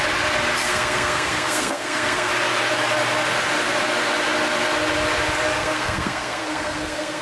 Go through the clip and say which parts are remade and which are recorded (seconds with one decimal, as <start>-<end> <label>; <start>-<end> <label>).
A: 0.0-0.6 recorded; 0.6-2.3 remade; 2.3-5.6 recorded; 5.6-7.2 remade